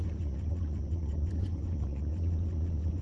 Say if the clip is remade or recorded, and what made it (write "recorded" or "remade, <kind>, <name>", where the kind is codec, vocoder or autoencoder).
remade, vocoder, Vocos